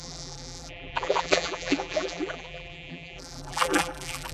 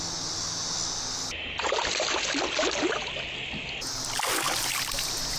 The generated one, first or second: first